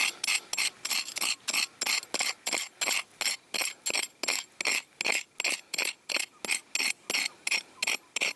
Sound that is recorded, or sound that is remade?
recorded